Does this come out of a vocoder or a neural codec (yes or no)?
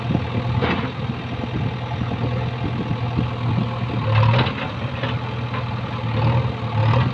no